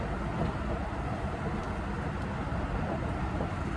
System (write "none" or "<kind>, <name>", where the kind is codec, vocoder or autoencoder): none